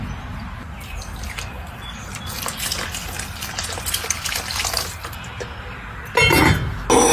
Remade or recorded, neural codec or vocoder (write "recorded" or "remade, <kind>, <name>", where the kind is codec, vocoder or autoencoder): recorded